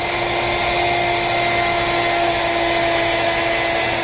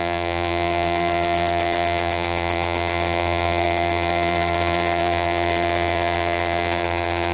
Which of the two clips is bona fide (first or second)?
first